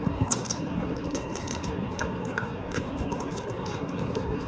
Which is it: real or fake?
fake